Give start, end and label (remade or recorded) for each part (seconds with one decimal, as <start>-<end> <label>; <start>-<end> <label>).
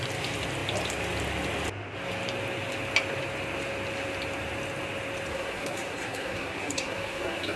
0.0-5.3 recorded; 5.3-7.6 remade